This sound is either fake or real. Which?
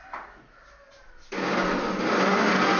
real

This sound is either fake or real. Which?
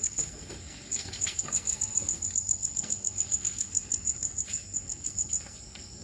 fake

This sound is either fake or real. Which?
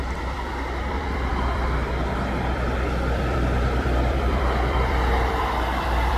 fake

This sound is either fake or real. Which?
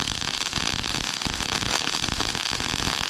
real